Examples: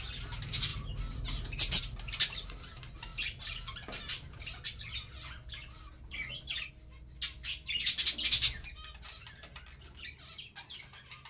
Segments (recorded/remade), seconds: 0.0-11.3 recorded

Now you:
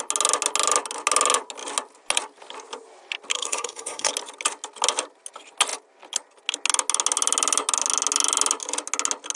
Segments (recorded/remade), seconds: 0.0-3.3 recorded; 3.3-4.1 remade; 4.1-9.4 recorded

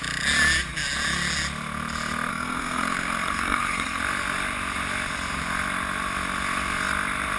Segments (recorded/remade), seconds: 0.0-2.3 recorded; 2.3-4.0 remade; 4.0-7.4 recorded

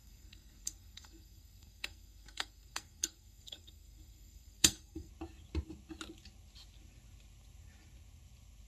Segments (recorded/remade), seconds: 0.0-5.1 remade; 5.1-8.7 recorded

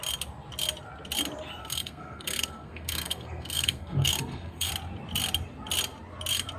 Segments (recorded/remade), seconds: 0.0-1.6 recorded; 1.6-4.7 remade; 4.7-6.6 recorded

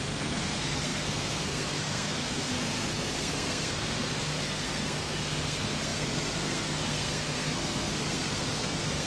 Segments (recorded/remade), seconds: 0.0-9.1 remade

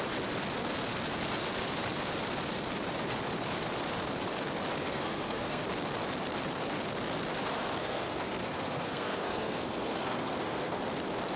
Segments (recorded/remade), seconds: 0.0-4.8 recorded; 4.8-5.6 remade; 5.6-7.8 recorded; 7.8-10.8 remade; 10.8-11.4 recorded